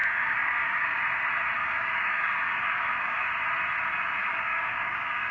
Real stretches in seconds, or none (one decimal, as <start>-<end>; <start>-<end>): 1.0-1.6; 3.3-4.2